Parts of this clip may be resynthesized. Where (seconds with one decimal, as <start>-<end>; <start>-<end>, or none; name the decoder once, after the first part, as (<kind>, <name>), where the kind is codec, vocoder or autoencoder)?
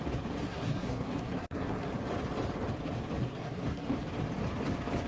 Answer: 0.4-1.9 (codec, SNAC); 3.3-3.9